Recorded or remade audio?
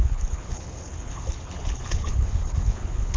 remade